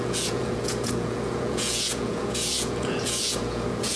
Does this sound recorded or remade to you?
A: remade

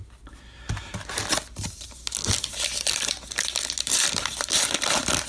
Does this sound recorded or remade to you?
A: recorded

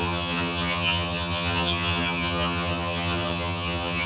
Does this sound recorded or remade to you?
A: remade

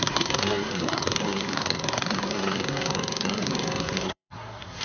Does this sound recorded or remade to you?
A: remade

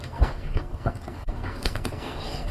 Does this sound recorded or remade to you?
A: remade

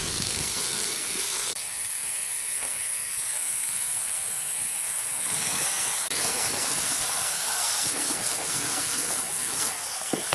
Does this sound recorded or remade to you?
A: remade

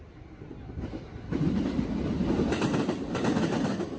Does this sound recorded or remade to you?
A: recorded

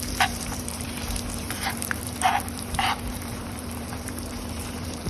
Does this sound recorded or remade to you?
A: remade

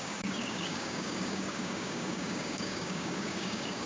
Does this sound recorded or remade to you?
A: remade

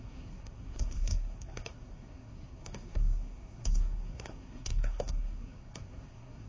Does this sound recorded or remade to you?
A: remade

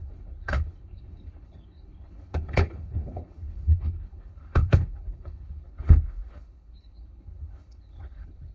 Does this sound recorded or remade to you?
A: remade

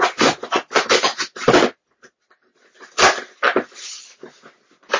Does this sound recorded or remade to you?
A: recorded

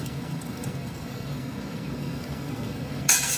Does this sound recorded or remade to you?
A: remade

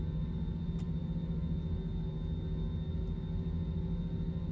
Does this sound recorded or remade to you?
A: recorded